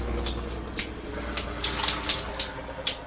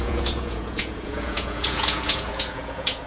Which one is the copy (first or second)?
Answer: second